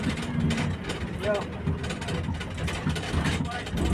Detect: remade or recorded recorded